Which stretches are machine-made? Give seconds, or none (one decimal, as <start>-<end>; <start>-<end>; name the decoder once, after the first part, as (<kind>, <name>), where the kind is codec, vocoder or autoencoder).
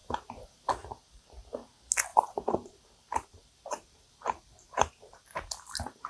0.0-0.7 (vocoder, BigVGAN v2); 2.1-6.1